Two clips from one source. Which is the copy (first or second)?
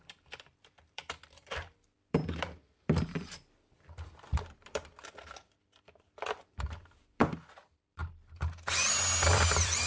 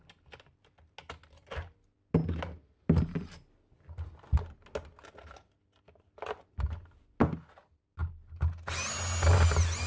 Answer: first